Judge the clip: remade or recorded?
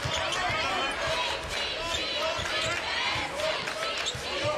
recorded